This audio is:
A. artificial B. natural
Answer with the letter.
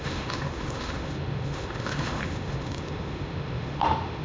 A